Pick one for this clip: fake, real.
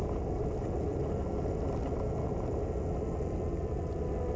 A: real